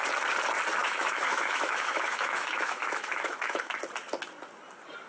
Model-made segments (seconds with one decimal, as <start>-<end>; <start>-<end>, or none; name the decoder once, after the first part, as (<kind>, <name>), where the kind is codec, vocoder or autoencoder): 0.8-3.7 (autoencoder, DAC-VAE)